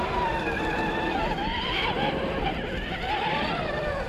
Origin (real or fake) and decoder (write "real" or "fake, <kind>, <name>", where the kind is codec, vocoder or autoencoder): fake, vocoder, BigVGAN v2